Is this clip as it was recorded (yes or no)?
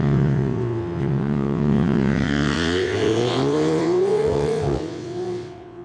no